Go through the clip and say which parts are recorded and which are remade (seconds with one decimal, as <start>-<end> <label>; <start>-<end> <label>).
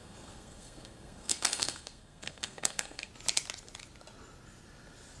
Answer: 0.0-3.1 remade; 3.1-5.2 recorded